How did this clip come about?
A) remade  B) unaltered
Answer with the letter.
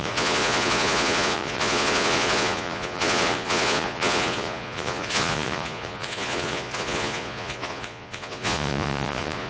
A